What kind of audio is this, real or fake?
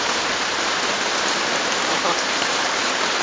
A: fake